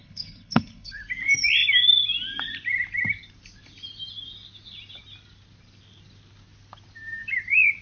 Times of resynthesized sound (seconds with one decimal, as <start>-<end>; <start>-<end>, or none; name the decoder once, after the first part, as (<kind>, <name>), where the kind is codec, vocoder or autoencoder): 0.0-1.0 (codec, HILCodec)